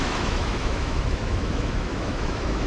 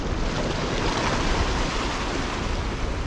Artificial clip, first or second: first